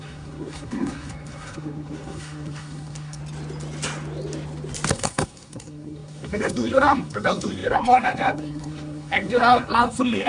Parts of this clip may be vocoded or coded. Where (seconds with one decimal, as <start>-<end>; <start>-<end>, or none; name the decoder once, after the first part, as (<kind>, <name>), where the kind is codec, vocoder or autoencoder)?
0.0-3.2 (codec, SNAC); 4.9-10.3